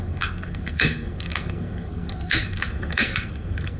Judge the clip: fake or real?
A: fake